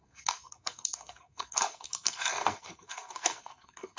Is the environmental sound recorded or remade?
remade